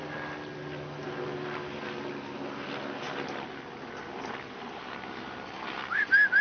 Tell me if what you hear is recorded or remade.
recorded